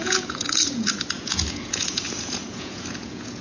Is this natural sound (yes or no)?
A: no